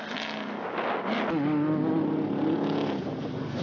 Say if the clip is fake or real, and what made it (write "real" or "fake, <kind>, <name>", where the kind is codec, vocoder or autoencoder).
real